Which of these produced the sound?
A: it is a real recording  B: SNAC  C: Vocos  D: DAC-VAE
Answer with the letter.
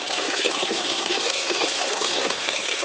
B